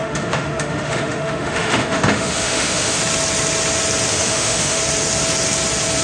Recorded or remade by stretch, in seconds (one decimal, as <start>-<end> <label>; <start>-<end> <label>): 0.0-3.0 remade; 3.0-4.1 recorded; 4.1-4.8 remade; 4.8-6.0 recorded